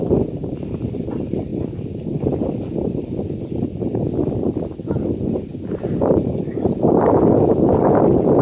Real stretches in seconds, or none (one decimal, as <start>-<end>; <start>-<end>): 0.0-8.4